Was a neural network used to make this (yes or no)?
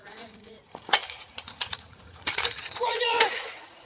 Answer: yes